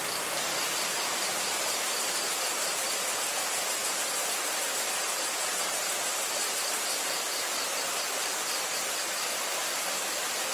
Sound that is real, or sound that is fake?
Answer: real